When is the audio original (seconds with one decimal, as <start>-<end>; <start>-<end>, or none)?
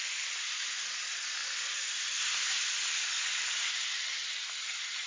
0.0-5.1